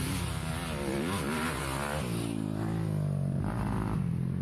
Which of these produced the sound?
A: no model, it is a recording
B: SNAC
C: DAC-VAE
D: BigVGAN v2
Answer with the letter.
A